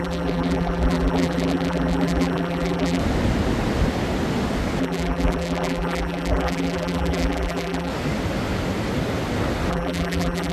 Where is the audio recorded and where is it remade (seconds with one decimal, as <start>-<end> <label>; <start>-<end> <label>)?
0.0-3.0 remade; 3.0-4.8 recorded; 4.8-7.9 remade; 7.9-9.7 recorded; 9.7-10.5 remade